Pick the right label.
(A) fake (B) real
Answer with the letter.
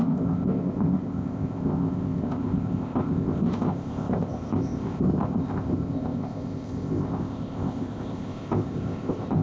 A